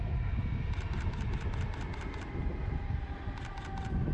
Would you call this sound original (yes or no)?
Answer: yes